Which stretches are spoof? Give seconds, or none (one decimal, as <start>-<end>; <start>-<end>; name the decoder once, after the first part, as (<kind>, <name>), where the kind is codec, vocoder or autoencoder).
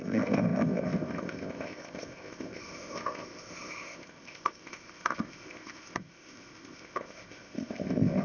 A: 0.0-8.2 (codec, ZipCodec)